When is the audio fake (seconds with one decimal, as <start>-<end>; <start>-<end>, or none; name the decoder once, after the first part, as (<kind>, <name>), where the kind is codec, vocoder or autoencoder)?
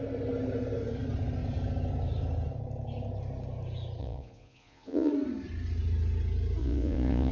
4.0-5.1 (vocoder, Vocos); 6.6-7.3